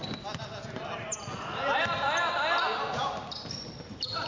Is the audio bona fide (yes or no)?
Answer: yes